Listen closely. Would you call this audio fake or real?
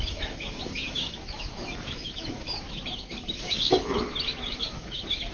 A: fake